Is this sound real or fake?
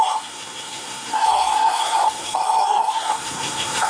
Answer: fake